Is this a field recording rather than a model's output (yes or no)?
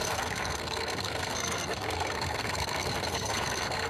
no